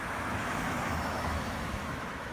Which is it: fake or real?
fake